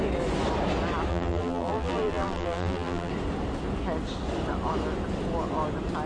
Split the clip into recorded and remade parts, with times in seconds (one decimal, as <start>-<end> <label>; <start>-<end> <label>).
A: 0.0-1.1 recorded; 1.1-3.1 remade; 3.1-6.1 recorded